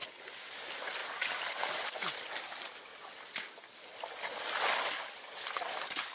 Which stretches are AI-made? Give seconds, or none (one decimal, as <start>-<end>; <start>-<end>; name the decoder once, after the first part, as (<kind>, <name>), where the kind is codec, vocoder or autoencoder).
none